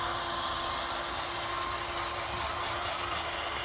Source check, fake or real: real